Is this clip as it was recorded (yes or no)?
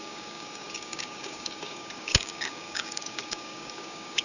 no